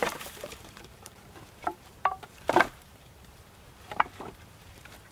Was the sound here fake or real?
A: fake